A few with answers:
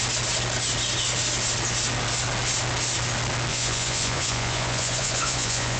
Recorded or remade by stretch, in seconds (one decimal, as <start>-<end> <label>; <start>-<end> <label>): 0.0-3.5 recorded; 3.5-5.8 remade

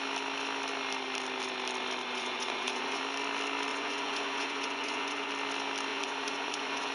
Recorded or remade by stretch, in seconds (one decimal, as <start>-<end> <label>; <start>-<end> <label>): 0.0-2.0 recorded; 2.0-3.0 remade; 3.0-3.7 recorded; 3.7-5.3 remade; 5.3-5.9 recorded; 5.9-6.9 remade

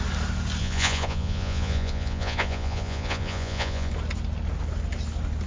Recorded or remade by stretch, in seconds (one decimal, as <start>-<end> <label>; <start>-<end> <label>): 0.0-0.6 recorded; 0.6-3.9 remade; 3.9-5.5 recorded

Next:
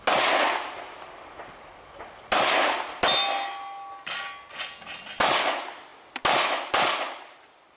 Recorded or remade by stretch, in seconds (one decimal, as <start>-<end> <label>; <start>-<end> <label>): 0.0-7.8 recorded